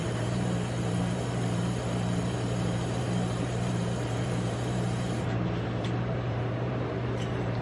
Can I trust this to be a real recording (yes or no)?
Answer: no